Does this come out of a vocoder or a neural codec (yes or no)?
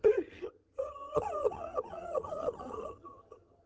yes